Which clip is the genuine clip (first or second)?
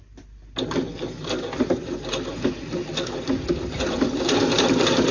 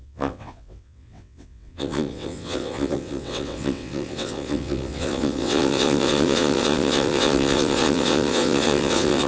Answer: first